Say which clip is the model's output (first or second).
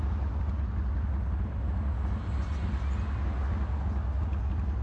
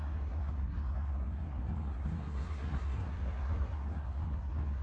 second